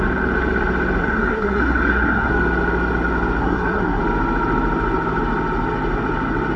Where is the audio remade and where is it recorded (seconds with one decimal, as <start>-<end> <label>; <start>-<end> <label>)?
0.0-1.0 recorded; 1.0-2.3 remade; 2.3-3.4 recorded; 3.4-4.0 remade; 4.0-6.6 recorded